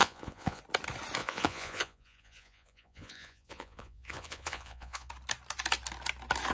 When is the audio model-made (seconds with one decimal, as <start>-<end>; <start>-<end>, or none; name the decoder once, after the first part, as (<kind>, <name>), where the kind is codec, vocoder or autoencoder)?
0.0-0.6 (vocoder, Vocos); 1.2-5.1